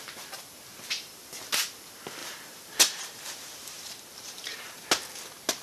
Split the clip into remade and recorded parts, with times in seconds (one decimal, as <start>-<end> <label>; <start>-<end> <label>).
0.0-0.7 recorded; 0.7-1.4 remade; 1.4-2.2 recorded; 2.2-4.8 remade; 4.8-5.6 recorded